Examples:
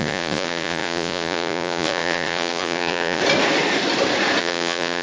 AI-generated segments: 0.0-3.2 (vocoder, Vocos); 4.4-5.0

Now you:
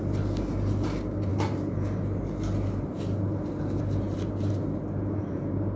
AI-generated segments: none

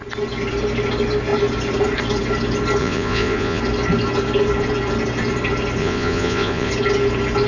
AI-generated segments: 2.8-3.6 (vocoder, Vocos); 5.8-6.7

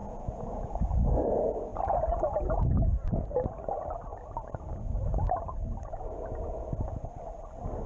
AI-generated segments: 0.0-0.7 (vocoder, Vocos)

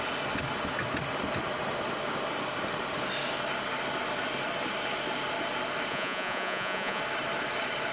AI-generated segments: 5.9-7.0 (vocoder, Vocos)

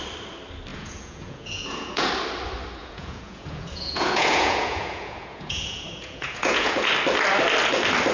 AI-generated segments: 0.7-2.1 (vocoder, Vocos); 2.8-6.9

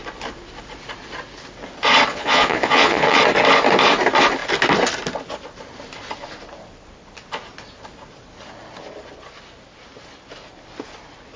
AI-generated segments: 2.1-3.2 (vocoder, Vocos)

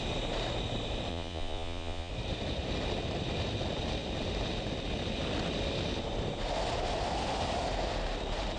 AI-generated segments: 1.1-2.1 (vocoder, Vocos)